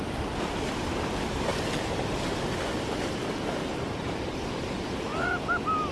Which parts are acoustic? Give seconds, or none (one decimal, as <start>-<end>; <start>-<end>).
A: 0.0-1.5; 2.3-3.7; 4.4-5.9